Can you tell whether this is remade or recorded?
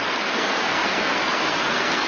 remade